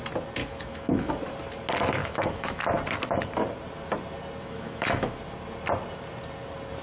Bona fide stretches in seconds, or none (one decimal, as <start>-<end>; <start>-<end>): 0.0-0.4; 1.1-2.0; 2.6-4.4; 5.2-6.8

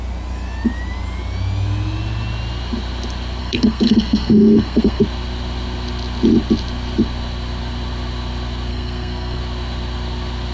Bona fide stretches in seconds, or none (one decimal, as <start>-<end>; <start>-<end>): 0.0-3.4; 5.0-8.7; 9.4-10.5

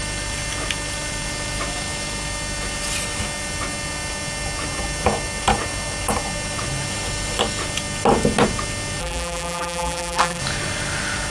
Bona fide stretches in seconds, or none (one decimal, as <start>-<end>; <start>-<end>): 0.0-9.0; 10.4-11.3

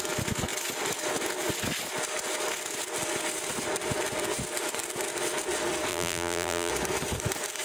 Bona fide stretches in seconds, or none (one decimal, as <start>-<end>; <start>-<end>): 0.0-5.9; 6.7-7.6

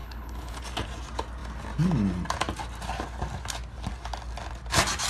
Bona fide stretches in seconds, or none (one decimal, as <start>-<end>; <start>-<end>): 0.6-5.1

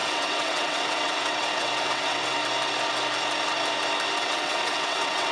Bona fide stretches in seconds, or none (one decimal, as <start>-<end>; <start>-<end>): 2.4-4.2

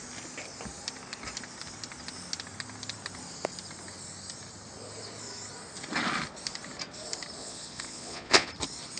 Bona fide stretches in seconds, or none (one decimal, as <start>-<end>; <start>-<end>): 0.0-7.4; 8.5-9.0